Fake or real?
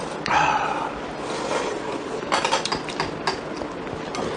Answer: real